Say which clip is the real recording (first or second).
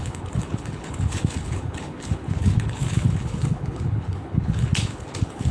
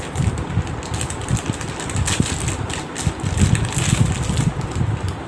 second